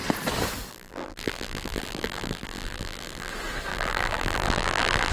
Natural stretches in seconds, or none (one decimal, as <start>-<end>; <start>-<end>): 0.0-0.7; 3.3-3.7